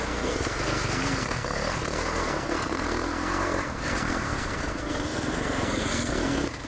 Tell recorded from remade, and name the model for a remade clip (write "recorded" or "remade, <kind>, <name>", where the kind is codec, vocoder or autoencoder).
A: remade, codec, SNAC